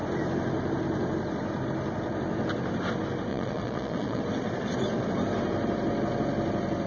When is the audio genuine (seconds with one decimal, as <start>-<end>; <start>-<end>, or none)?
0.0-3.3; 4.2-6.9